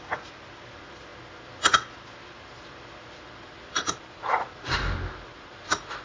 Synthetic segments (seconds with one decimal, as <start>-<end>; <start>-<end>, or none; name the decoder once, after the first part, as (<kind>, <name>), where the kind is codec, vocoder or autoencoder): 0.0-6.0 (vocoder, BigVGAN v2)